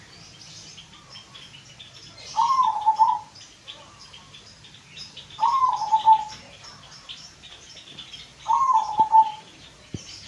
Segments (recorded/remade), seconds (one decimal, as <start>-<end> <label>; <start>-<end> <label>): 0.0-8.3 remade; 8.3-8.9 recorded; 8.9-10.3 remade